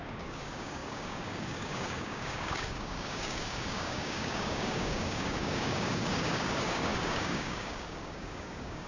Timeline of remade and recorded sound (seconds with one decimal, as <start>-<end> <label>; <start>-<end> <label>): 0.0-8.9 remade